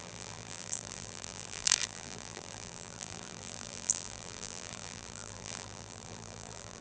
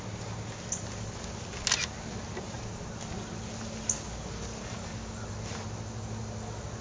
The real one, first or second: second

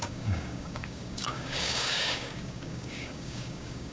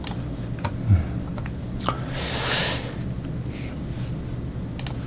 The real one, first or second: second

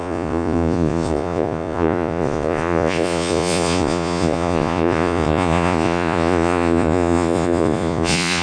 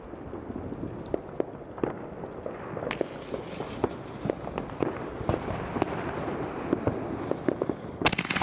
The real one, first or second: second